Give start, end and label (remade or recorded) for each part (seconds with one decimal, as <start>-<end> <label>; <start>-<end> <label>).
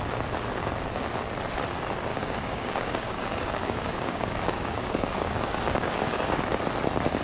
0.0-2.1 recorded; 2.1-6.4 remade; 6.4-7.2 recorded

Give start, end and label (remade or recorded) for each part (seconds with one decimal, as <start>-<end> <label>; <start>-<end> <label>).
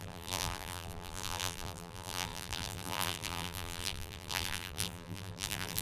0.0-5.8 remade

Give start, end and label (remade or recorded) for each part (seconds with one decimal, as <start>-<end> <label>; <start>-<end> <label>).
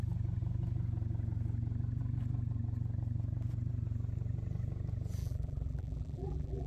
0.0-5.2 recorded; 5.2-6.7 remade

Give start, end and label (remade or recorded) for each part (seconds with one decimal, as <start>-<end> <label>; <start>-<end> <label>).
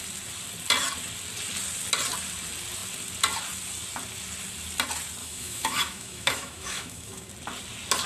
0.0-5.2 recorded; 5.2-7.3 remade; 7.3-8.1 recorded